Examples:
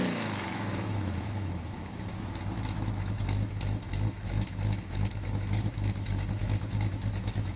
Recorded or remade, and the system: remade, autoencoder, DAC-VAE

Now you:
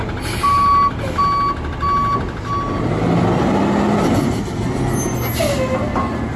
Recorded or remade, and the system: recorded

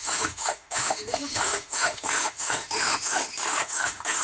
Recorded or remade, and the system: remade, autoencoder, DAC-VAE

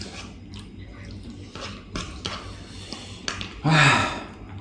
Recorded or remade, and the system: recorded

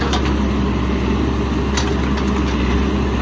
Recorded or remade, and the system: recorded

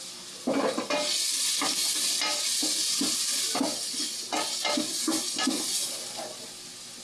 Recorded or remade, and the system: recorded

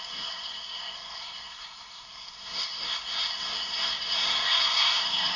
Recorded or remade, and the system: remade, codec, SNAC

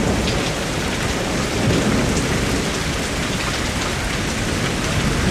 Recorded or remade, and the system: recorded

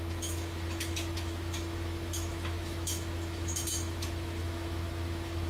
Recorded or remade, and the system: remade, autoencoder, DAC-VAE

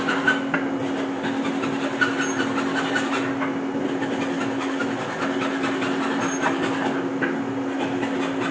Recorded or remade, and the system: recorded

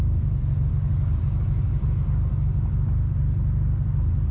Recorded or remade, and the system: recorded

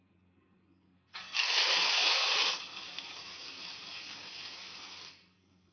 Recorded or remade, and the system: remade, codec, SNAC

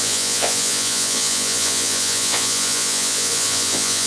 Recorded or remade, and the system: remade, vocoder, Vocos